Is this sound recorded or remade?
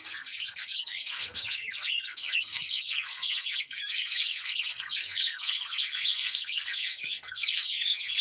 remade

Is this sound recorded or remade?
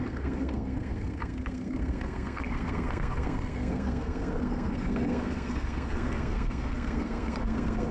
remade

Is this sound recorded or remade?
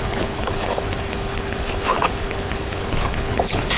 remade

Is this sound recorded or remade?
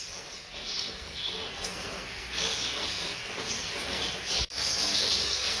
remade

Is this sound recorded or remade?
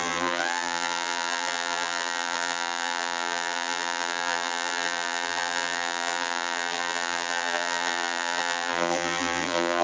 remade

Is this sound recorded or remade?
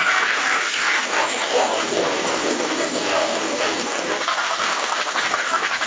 remade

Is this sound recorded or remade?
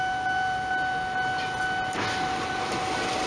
recorded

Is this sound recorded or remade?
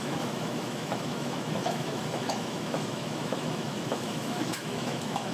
remade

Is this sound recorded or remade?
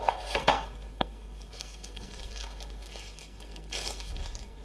remade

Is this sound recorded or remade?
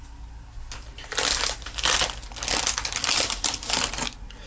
recorded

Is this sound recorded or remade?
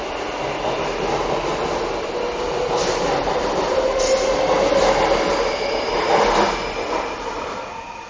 recorded